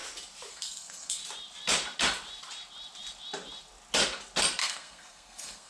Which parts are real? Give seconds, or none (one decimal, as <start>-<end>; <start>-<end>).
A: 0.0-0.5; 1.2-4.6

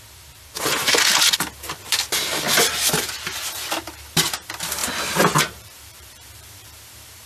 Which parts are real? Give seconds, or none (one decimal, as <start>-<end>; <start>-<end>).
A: 1.1-1.9; 4.8-5.4

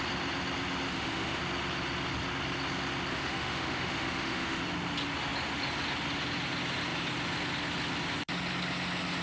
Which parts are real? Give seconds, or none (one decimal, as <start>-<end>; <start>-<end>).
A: 0.0-0.9; 1.4-3.1; 4.6-9.2

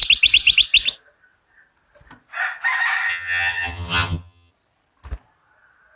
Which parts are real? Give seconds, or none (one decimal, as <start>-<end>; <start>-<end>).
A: 0.0-3.1; 4.5-6.0

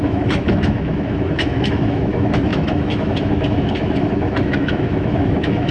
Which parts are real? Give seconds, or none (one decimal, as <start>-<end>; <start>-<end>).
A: none